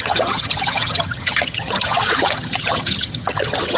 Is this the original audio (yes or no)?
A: no